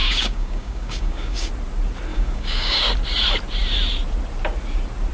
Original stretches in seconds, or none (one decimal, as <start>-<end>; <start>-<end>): 1.5-2.1; 2.8-5.1